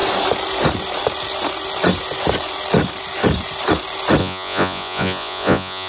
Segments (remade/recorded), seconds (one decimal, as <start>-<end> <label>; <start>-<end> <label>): 0.0-4.2 recorded; 4.2-5.9 remade